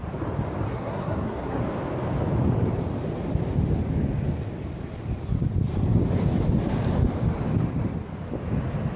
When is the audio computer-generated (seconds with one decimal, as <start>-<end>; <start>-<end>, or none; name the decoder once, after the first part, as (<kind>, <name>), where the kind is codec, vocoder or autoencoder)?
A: 0.7-1.6 (codec, SNAC)